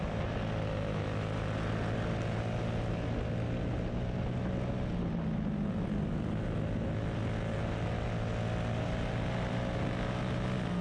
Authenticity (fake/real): real